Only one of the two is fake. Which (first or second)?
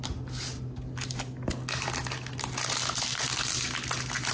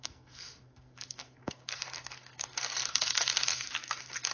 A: second